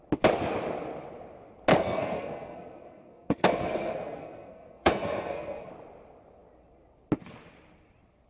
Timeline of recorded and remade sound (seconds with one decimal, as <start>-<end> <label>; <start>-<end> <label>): 0.0-1.7 recorded; 1.7-5.7 remade; 5.7-8.3 recorded